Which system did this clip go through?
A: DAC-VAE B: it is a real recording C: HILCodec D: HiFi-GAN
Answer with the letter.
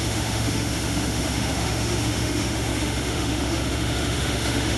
A